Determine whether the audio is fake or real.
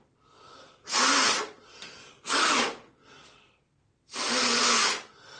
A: real